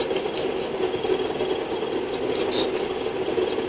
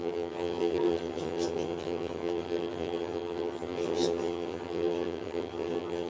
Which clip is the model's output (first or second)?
second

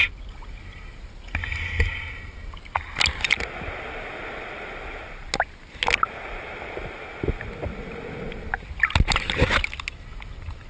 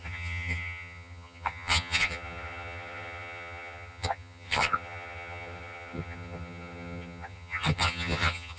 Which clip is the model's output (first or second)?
second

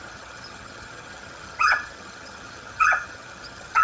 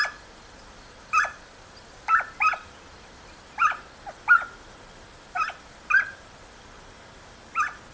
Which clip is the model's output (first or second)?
first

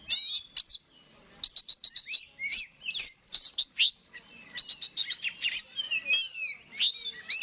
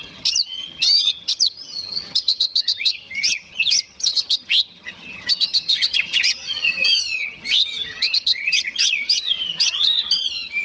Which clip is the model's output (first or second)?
second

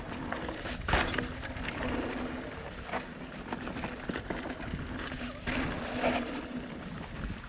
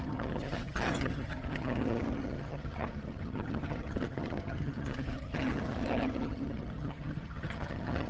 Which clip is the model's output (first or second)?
second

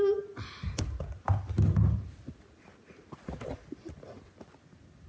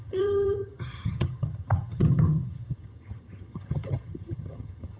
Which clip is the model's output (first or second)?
second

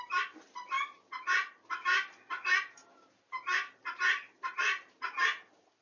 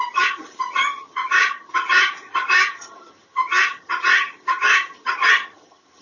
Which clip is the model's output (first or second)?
second